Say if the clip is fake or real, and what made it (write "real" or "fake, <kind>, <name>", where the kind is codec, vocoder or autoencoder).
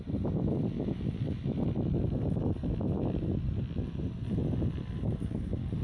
real